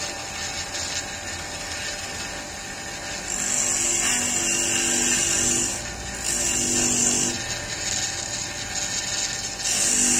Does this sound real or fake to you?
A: real